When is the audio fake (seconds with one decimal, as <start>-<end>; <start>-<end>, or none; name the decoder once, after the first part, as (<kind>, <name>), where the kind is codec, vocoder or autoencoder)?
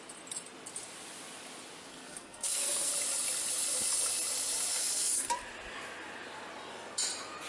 1.9-2.9 (codec, SNAC); 4.7-5.3